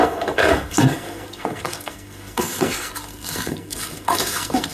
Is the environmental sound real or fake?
fake